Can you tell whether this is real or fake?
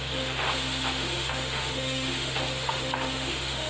fake